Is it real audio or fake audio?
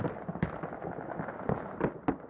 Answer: real